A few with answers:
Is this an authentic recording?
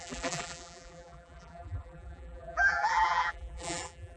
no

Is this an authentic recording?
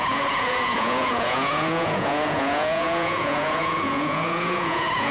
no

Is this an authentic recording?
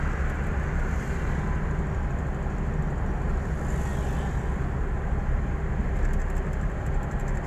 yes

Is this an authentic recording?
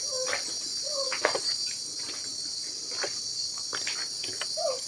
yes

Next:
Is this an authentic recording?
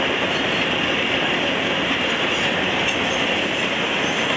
yes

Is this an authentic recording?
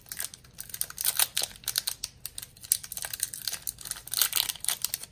yes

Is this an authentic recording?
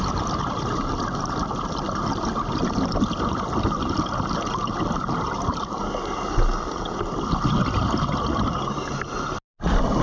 yes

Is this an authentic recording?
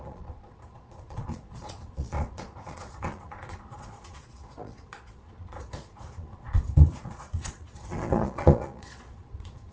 no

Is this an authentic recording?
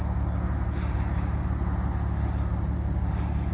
yes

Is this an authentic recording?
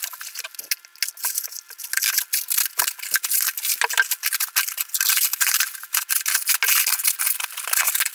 yes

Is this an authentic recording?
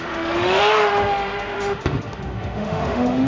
no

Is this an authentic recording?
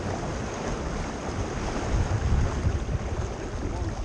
yes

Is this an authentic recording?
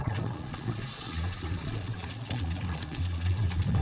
no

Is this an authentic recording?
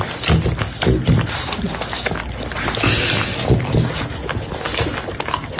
yes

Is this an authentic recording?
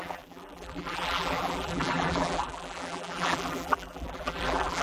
no